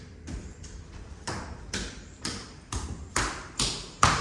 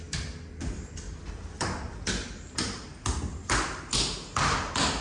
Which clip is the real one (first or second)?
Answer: second